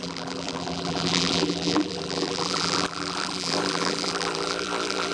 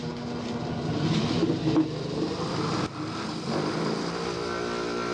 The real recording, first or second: second